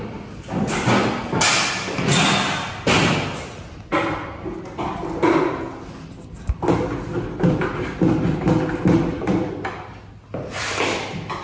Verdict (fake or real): real